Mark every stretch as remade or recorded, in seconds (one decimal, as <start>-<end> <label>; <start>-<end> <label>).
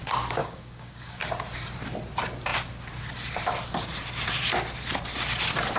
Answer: 0.0-0.4 recorded; 0.4-1.2 remade; 1.2-5.8 recorded